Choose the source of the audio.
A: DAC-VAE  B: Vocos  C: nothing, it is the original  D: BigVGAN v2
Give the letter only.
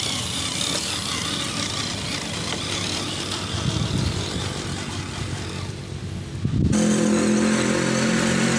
C